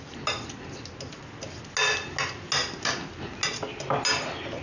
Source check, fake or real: real